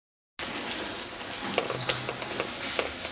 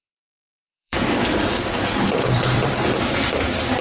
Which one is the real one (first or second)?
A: first